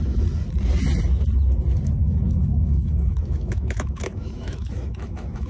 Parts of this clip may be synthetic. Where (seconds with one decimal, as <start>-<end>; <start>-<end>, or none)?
2.0-5.5